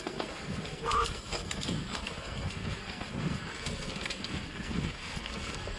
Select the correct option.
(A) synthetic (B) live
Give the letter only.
A